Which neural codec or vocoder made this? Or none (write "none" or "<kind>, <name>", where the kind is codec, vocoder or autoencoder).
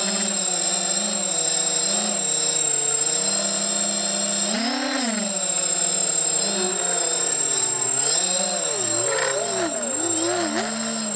none